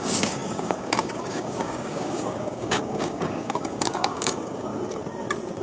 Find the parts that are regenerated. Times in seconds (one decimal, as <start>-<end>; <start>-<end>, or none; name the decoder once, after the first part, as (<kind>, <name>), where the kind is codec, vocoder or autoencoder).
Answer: 0.0-4.7 (codec, DAC)